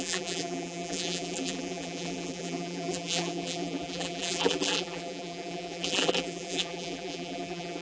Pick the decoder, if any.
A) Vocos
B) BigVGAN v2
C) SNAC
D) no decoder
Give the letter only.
B